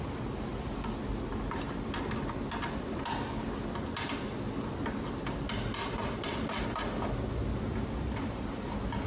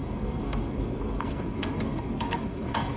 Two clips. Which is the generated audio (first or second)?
second